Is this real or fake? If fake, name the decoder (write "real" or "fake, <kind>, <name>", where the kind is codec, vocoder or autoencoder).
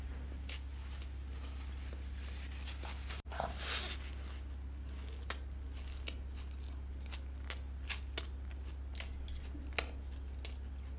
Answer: real